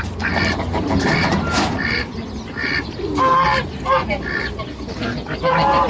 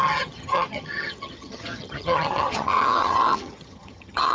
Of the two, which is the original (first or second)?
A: first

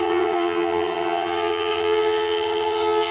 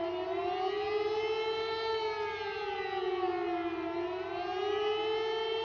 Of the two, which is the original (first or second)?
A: second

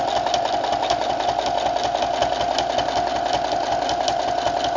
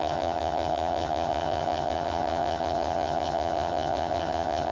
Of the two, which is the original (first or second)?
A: first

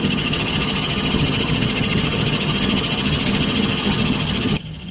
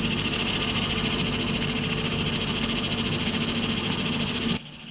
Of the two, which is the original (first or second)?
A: second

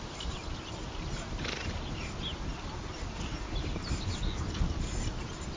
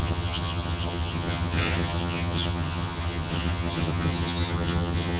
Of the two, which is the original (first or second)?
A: first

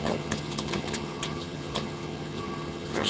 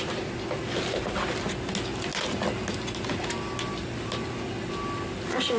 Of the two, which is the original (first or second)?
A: second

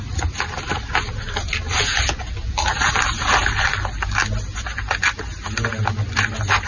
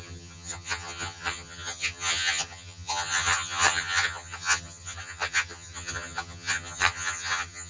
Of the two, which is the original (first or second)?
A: first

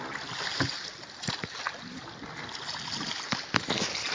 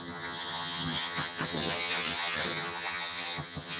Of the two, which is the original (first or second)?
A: first